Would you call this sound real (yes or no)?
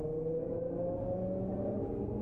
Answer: yes